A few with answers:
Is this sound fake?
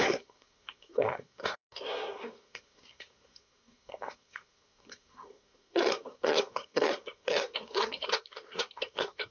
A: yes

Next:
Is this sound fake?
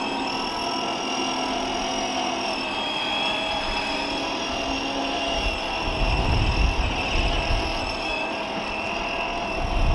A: no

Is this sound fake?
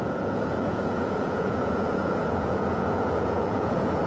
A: yes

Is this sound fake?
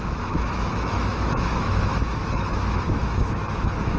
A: yes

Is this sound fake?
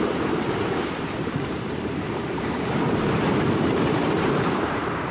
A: yes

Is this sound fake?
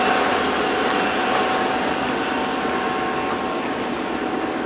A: no